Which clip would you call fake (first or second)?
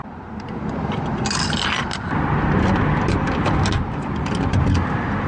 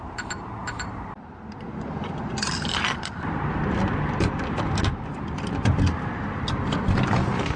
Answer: second